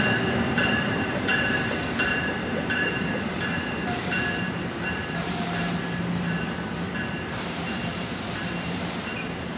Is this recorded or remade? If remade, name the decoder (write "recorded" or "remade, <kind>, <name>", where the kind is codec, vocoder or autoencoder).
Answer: remade, vocoder, BigVGAN v2